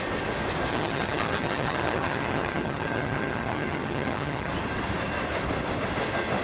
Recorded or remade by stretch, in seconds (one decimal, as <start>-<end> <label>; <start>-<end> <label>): 0.0-0.7 recorded; 0.7-4.5 remade; 4.5-6.4 recorded